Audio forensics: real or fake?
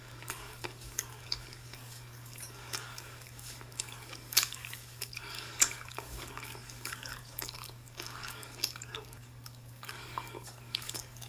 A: fake